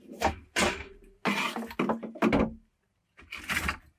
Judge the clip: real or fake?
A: real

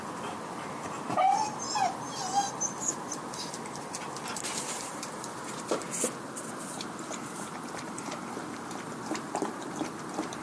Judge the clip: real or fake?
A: fake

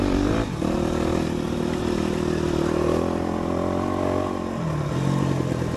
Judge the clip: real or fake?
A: real